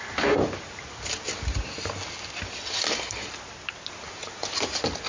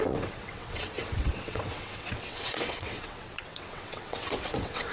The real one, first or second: first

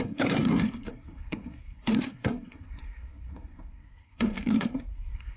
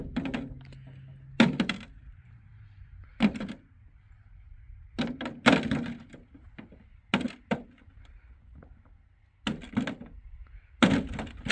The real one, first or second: second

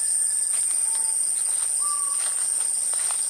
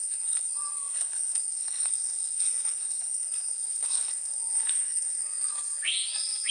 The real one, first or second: first